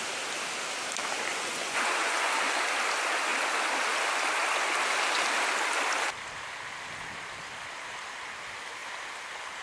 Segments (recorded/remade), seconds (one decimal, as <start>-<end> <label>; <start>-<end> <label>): 0.0-1.3 recorded; 1.3-2.6 remade; 2.6-9.6 recorded